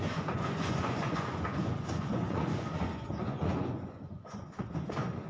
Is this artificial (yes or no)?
yes